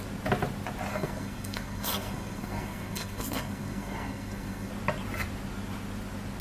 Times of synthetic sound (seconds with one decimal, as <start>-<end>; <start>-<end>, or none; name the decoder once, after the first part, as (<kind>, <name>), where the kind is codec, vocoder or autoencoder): 0.9-4.7 (codec, SNAC)